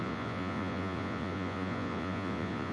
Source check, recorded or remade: remade